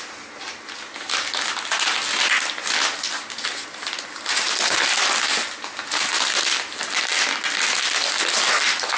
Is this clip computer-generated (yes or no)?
no